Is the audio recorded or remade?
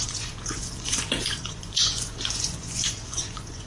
remade